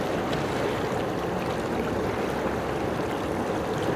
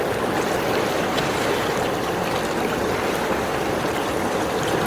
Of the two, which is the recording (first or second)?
first